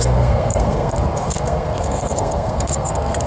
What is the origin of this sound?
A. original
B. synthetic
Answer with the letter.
B